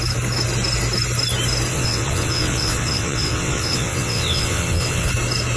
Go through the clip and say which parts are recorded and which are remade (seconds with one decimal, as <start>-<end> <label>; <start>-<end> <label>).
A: 0.0-1.7 recorded; 1.7-5.1 remade; 5.1-5.6 recorded